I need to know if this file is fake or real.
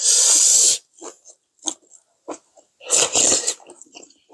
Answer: real